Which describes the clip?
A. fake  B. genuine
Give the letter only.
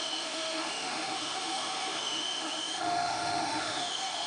A